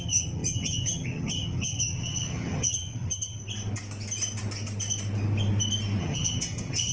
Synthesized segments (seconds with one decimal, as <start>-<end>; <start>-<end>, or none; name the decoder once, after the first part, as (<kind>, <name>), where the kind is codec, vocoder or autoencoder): 0.0-3.4 (vocoder, HiFi-GAN); 6.0-6.9

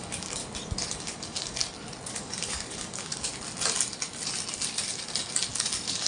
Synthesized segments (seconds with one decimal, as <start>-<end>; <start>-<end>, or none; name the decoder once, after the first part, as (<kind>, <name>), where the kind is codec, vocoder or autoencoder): 0.0-0.4 (codec, DAC); 0.9-1.6; 2.1-3.3; 5.5-6.1

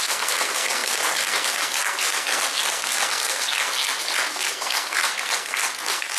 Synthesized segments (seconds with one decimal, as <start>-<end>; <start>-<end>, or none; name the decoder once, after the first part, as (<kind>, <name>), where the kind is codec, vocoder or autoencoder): 0.0-6.2 (codec, SNAC)

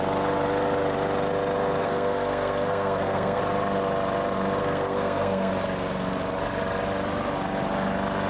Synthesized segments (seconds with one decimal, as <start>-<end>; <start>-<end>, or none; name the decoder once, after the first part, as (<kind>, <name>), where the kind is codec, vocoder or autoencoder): 1.8-3.4 (codec, SNAC); 4.6-5.5

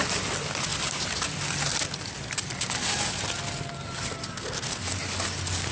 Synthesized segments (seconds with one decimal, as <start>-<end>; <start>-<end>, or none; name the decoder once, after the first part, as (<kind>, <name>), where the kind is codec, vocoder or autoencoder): none